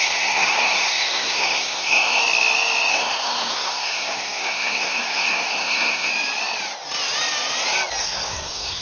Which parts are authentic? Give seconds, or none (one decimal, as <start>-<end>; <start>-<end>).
2.2-2.9; 6.1-8.0